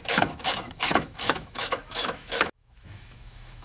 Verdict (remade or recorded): remade